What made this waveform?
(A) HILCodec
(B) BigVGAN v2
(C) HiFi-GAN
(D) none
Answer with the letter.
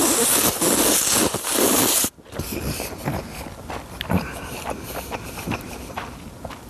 D